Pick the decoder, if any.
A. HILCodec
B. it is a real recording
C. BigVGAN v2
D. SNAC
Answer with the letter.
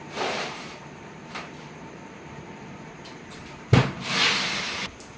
C